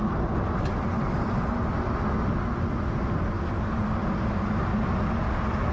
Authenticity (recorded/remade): recorded